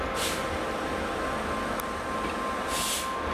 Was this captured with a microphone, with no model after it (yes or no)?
yes